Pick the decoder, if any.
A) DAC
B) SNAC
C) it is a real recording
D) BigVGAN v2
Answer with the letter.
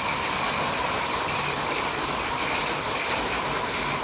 C